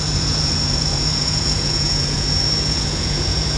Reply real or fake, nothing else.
fake